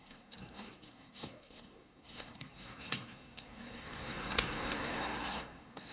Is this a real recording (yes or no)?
no